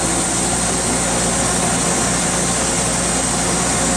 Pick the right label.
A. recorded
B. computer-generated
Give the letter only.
A